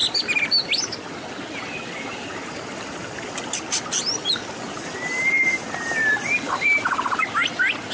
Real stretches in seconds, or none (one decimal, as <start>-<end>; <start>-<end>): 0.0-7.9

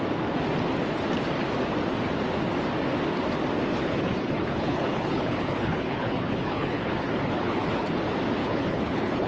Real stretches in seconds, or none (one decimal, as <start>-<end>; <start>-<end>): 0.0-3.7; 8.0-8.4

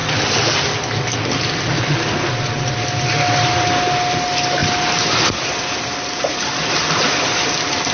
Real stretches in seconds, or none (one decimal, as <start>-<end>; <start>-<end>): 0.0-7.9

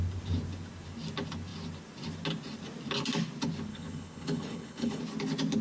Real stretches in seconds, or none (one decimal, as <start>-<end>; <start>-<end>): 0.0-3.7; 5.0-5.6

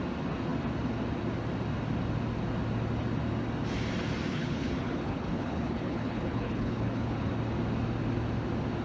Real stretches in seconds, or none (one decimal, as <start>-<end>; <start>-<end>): 0.0-4.3; 7.3-8.8